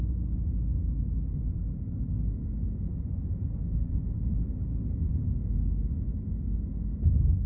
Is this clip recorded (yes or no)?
yes